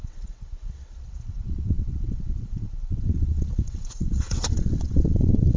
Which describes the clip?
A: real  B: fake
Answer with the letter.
B